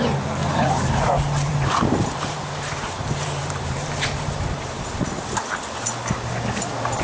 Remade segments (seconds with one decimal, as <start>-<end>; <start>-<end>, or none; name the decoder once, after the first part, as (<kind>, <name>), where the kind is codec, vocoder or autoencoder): 0.4-1.1 (vocoder, BigVGAN v2); 1.5-4.9